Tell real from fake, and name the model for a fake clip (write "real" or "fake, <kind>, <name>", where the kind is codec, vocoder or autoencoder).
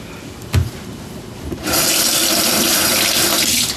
real